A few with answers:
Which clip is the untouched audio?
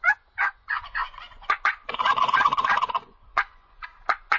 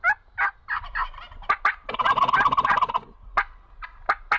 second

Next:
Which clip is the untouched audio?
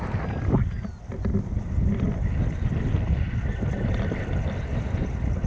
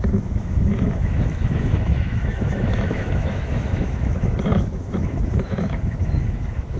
first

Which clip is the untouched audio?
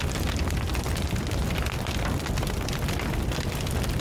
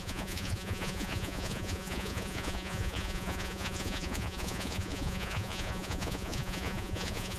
first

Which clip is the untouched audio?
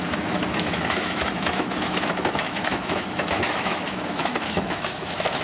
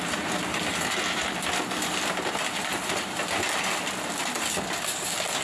second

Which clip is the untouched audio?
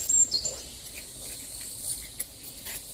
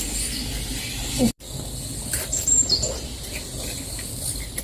first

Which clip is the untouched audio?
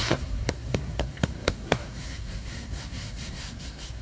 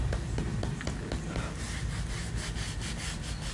second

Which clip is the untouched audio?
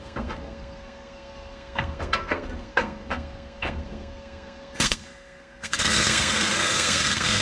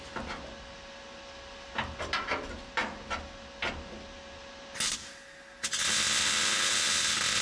second